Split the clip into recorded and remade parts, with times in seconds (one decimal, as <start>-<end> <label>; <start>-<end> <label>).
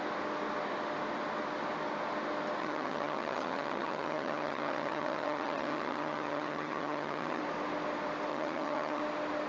0.0-2.6 recorded; 2.6-7.4 remade; 7.4-8.3 recorded; 8.3-9.0 remade; 9.0-9.5 recorded